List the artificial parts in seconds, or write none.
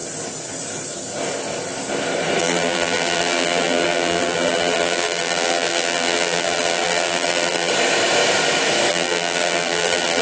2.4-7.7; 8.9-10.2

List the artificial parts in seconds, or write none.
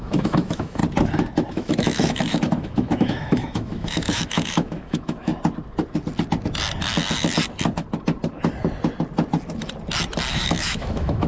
0.0-0.8; 1.5-5.3; 10.3-11.3